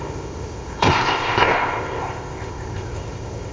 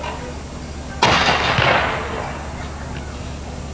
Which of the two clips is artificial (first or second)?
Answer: first